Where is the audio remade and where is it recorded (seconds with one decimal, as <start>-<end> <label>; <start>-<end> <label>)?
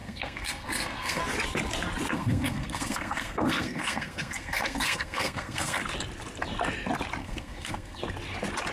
0.0-1.2 remade; 1.2-2.1 recorded; 2.1-5.8 remade; 5.8-7.2 recorded; 7.2-8.0 remade; 8.0-8.7 recorded